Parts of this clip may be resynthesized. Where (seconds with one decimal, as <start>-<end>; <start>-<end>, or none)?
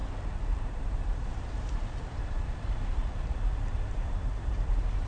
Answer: 0.6-5.1